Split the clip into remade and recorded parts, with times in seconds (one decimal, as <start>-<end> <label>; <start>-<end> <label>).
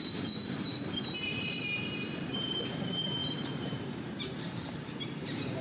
0.0-5.6 remade